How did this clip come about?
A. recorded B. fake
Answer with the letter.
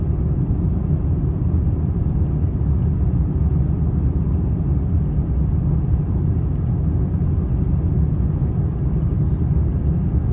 A